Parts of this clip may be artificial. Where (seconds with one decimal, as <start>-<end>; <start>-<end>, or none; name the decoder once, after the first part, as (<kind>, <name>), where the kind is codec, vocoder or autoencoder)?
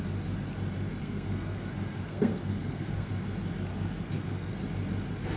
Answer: 1.0-3.1 (codec, SNAC); 3.7-4.5